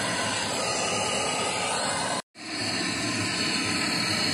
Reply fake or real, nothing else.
real